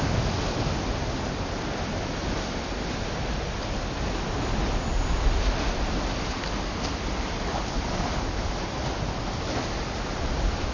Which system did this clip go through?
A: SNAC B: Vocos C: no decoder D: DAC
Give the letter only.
C